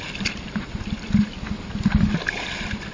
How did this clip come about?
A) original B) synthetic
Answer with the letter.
A